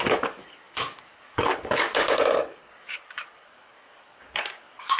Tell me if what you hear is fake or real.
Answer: fake